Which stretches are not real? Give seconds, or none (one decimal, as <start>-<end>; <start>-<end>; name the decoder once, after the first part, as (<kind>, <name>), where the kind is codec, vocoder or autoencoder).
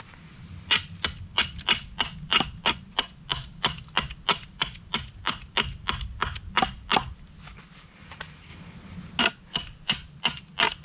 none